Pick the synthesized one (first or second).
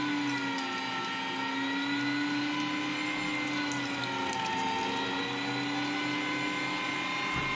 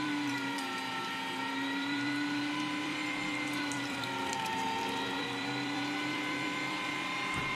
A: second